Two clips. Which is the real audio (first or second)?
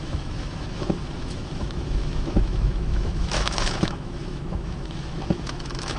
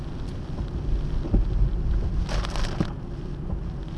second